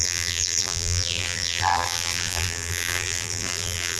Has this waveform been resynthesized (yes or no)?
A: yes